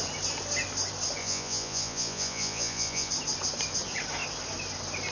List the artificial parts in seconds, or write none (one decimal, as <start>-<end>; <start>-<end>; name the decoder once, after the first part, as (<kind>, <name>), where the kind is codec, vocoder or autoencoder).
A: 1.2-3.1 (vocoder, Vocos)